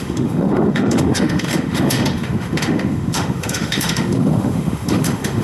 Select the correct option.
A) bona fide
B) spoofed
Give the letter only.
B